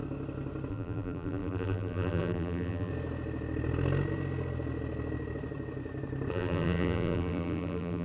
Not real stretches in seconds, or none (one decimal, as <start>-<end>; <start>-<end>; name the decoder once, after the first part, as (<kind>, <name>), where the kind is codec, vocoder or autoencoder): 0.7-2.9 (vocoder, BigVGAN v2); 6.3-8.0